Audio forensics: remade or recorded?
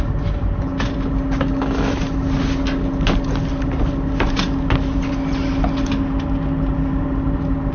recorded